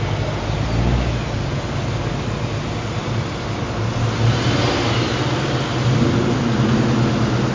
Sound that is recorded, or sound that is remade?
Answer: recorded